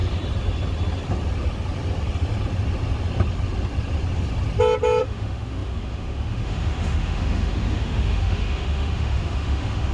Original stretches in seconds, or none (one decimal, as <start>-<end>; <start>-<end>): 0.0-5.0